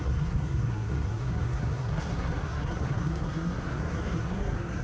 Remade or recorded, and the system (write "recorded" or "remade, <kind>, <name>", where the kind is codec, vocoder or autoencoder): remade, codec, SNAC